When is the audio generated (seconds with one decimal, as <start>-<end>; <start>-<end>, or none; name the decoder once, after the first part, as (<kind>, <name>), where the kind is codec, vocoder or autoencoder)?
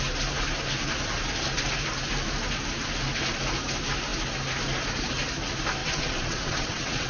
5.8-7.1 (vocoder, WaveNeXt)